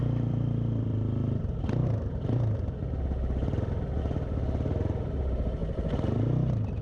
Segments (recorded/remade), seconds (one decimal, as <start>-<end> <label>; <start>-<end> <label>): 0.0-5.6 remade; 5.6-6.8 recorded